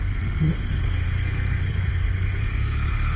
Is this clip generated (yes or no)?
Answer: yes